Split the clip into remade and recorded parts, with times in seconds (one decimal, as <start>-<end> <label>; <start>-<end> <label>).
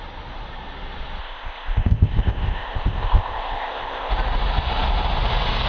0.0-1.2 recorded; 1.2-4.1 remade; 4.1-5.7 recorded